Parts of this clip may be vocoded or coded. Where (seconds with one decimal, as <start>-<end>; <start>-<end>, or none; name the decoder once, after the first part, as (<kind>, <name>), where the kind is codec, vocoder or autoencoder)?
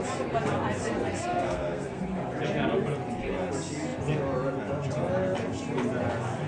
1.3-2.0 (codec, SNAC)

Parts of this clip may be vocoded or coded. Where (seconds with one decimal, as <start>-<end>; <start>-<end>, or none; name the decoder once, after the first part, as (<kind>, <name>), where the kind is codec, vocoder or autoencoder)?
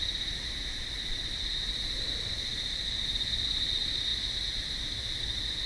none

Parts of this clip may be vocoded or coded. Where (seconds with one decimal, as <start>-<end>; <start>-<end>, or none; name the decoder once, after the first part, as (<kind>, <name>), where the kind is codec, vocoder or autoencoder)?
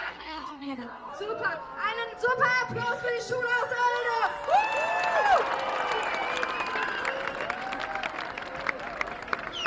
0.0-1.1 (codec, SNAC)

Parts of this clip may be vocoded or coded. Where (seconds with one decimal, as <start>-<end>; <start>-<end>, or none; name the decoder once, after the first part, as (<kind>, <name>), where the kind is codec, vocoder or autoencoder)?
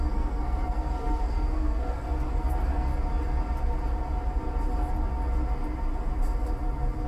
0.0-2.9 (codec, SNAC)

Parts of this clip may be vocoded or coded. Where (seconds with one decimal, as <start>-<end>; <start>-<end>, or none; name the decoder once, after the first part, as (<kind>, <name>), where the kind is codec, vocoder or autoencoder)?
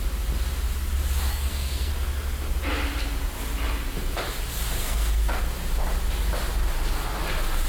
1.3-1.9 (codec, SNAC); 4.8-5.4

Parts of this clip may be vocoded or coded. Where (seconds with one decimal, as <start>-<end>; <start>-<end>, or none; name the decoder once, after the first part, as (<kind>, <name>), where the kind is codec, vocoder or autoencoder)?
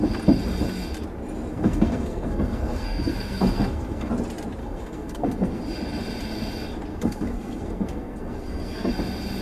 1.5-4.1 (codec, SNAC); 4.6-5.6; 6.9-8.9